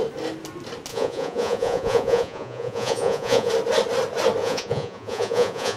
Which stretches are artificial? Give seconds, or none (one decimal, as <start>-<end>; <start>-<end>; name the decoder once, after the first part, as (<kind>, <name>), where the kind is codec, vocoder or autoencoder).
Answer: 0.9-3.5 (vocoder, Vocos); 4.4-5.8